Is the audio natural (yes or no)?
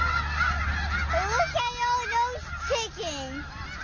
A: yes